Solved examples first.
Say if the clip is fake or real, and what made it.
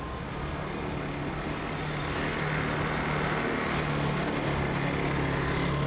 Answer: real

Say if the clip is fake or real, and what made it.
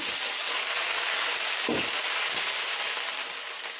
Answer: real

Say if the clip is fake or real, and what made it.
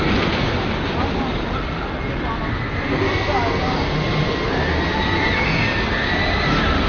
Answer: real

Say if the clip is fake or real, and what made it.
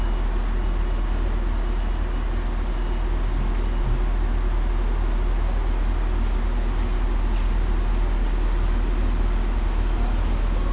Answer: real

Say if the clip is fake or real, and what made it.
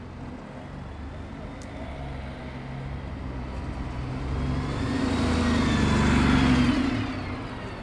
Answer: real